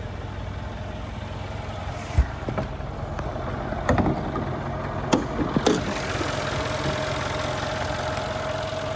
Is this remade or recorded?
recorded